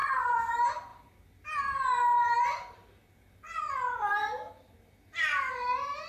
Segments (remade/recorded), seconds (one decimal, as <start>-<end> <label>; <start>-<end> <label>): 0.0-0.5 remade; 0.5-6.1 recorded